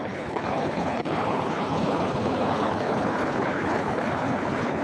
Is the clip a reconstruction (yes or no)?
yes